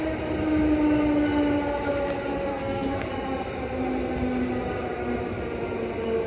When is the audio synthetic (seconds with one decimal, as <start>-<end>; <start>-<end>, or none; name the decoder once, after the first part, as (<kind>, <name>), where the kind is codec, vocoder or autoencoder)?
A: 2.5-3.1 (codec, SNAC)

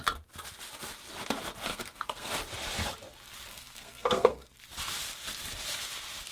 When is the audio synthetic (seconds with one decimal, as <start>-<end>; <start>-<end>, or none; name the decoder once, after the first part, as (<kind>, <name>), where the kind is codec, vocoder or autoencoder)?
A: 1.7-2.3 (codec, SNAC); 3.5-4.5

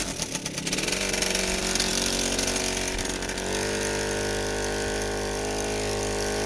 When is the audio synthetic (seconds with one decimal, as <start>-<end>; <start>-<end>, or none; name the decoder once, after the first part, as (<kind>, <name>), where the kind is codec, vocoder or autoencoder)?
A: none

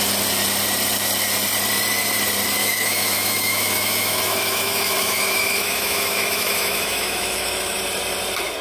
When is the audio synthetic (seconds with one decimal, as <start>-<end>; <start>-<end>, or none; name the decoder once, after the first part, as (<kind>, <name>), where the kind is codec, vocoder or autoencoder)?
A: 2.6-7.8 (autoencoder, DAC-VAE)

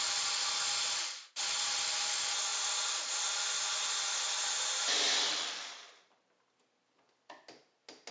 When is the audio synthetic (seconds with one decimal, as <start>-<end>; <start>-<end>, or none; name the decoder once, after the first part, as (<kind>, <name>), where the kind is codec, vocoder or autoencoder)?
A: 2.5-3.5 (vocoder, BigVGAN v2)

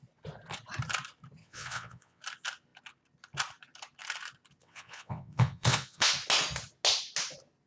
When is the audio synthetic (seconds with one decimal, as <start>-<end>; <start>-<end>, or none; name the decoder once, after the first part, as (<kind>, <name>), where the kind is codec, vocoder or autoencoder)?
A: 1.4-2.2 (vocoder, WaveNeXt); 4.6-6.1

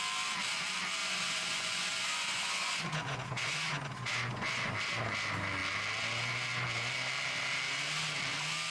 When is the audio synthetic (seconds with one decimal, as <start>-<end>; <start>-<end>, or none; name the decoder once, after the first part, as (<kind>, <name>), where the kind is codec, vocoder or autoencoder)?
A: 1.0-4.7 (vocoder, Vocos)

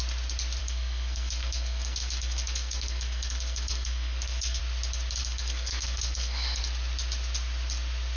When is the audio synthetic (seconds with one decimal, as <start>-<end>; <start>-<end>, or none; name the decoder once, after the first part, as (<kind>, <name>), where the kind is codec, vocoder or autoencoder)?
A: 0.6-4.6 (codec, SNAC); 5.2-6.6